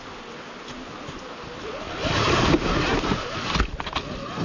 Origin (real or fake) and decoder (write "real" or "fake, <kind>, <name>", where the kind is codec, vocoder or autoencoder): real